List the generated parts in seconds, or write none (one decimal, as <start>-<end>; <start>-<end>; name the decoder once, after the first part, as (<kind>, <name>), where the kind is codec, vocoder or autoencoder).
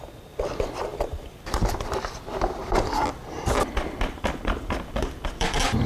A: 0.0-5.9 (vocoder, BigVGAN v2)